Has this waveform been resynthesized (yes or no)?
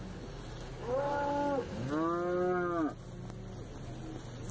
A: no